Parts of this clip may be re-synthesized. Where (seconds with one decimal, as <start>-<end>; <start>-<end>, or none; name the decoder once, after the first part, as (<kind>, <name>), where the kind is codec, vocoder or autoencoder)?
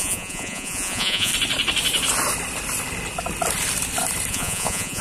0.0-1.3 (vocoder, Vocos); 4.3-5.0